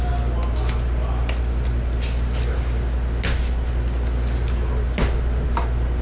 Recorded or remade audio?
recorded